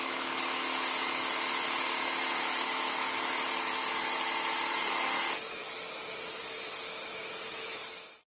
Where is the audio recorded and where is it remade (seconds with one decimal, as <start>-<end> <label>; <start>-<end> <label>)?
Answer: 0.0-5.6 remade; 5.6-6.4 recorded; 6.4-8.4 remade